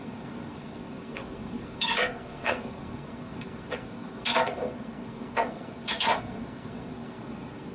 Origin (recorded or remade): remade